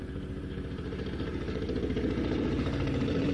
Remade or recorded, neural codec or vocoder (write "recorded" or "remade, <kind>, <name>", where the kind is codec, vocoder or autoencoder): remade, vocoder, BigVGAN v2